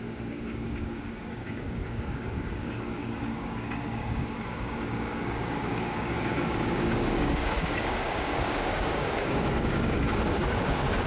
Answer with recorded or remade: remade